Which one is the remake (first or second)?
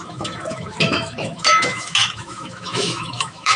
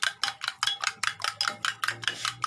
first